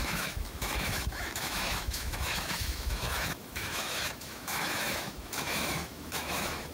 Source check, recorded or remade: remade